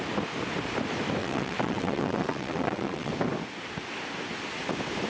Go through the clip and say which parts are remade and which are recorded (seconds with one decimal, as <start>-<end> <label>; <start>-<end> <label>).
0.0-1.2 recorded; 1.2-3.1 remade; 3.1-5.1 recorded